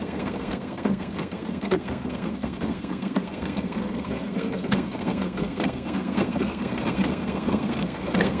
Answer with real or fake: fake